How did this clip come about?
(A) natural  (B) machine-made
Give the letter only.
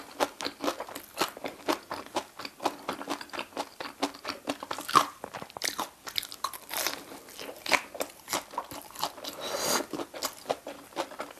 A